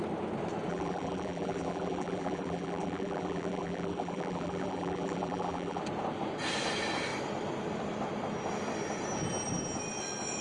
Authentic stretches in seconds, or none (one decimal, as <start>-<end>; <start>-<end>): 0.0-0.7; 5.8-10.4

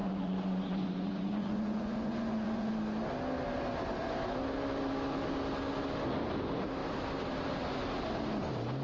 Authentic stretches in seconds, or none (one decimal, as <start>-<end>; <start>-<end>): 2.7-8.8